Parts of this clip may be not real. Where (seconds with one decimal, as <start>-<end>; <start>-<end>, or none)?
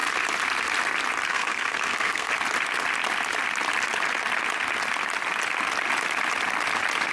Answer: 1.3-2.3